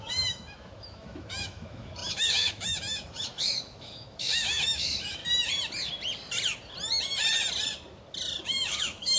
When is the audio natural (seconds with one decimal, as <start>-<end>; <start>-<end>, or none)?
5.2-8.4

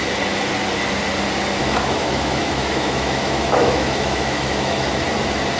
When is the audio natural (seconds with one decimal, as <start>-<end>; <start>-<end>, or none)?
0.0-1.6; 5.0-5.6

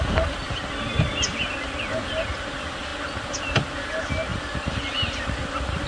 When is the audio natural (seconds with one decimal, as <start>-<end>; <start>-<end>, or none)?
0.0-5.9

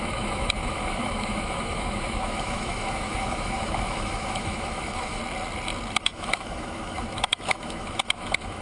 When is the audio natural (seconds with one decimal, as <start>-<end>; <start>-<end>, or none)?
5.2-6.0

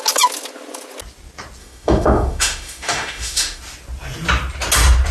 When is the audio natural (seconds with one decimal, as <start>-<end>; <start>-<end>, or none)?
0.0-1.6; 3.6-5.1

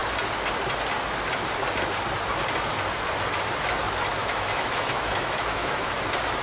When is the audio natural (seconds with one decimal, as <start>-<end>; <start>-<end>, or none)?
0.0-4.2; 5.9-6.4